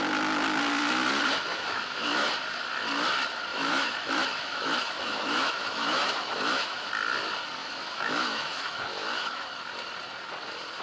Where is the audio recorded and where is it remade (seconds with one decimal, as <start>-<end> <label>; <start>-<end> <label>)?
0.0-1.5 recorded; 1.5-2.3 remade; 2.3-3.5 recorded; 3.5-6.9 remade; 6.9-7.6 recorded; 7.6-9.5 remade; 9.5-10.8 recorded

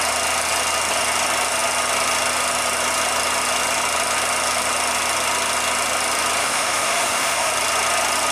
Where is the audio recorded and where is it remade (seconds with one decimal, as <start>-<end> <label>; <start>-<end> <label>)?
0.0-6.4 recorded; 6.4-7.5 remade; 7.5-8.3 recorded